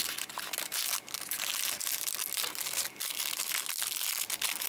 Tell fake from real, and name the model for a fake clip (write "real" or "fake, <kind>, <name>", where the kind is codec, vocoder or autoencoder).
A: real